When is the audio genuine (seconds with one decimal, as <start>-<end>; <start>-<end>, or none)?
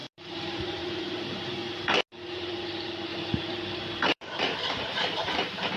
1.6-2.3